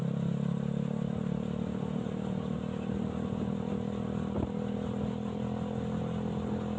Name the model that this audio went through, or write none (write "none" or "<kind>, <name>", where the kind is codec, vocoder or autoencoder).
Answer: none